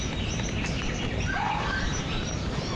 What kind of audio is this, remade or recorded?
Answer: remade